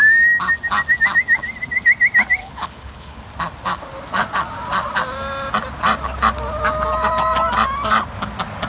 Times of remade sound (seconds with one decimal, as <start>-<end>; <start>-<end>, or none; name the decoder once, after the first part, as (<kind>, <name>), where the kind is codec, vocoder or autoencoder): 2.4-3.2 (codec, HILCodec)